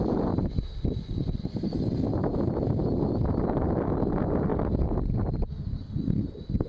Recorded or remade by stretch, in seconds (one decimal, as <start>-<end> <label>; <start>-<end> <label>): 0.0-2.1 remade; 2.1-3.3 recorded; 3.3-4.5 remade; 4.5-5.2 recorded; 5.2-6.7 remade